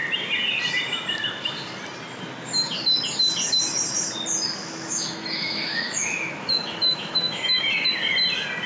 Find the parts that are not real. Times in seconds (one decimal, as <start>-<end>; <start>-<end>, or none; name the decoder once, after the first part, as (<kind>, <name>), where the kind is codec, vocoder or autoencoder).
4.6-7.9 (autoencoder, DAC-VAE)